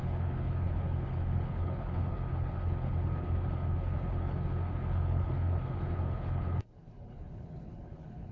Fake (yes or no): yes